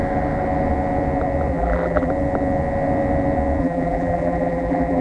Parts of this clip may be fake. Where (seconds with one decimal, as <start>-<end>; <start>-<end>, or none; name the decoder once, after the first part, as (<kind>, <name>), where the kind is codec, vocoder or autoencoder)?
1.5-2.1 (vocoder, BigVGAN v2); 3.6-5.0